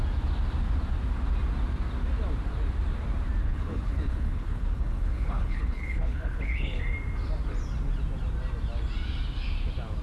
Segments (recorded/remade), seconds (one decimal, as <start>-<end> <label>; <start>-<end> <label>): 0.0-3.4 recorded; 3.4-6.8 remade; 6.8-10.0 recorded